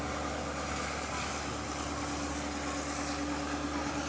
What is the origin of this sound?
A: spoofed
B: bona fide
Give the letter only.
B